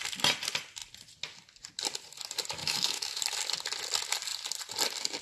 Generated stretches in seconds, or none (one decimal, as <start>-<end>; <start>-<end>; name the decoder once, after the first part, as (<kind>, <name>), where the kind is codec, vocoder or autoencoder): 2.6-3.2 (autoencoder, DAC-VAE)